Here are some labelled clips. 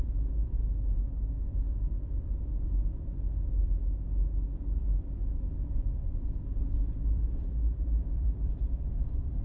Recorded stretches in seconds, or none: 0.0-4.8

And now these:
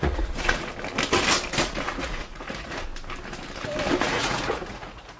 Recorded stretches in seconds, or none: 0.7-1.6; 2.9-4.0

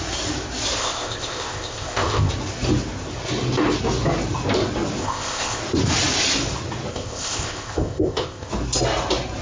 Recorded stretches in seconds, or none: 0.0-0.8; 2.3-5.0; 5.6-6.9; 8.5-9.4